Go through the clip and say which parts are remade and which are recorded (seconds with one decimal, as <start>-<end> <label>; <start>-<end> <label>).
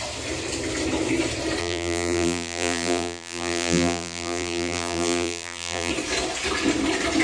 0.0-1.6 recorded; 1.6-5.9 remade; 5.9-7.2 recorded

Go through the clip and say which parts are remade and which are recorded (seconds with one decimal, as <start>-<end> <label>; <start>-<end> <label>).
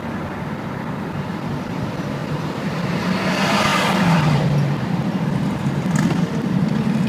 0.0-2.2 remade; 2.2-3.3 recorded; 3.3-7.1 remade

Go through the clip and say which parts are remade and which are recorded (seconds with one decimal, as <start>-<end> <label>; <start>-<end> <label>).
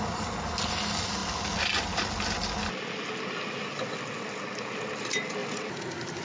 0.0-5.4 recorded; 5.4-6.2 remade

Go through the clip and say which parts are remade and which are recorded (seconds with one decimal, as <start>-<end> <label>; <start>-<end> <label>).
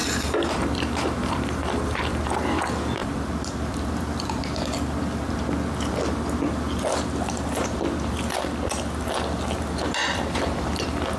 0.0-2.6 remade; 2.6-3.0 recorded; 3.0-5.3 remade; 5.3-10.0 recorded; 10.0-11.2 remade